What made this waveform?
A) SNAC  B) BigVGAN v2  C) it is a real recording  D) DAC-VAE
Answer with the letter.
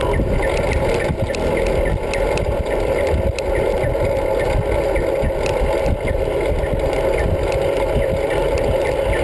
C